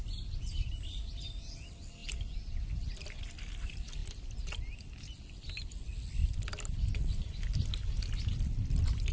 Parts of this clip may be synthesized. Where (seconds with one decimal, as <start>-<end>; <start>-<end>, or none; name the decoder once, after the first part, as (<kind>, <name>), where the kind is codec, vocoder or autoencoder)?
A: none